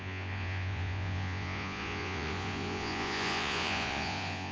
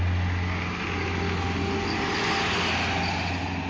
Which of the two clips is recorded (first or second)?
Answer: second